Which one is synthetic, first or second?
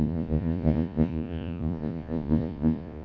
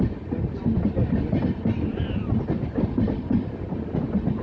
first